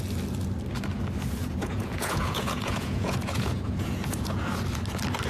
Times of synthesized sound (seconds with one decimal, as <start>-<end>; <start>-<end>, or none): 1.4-4.6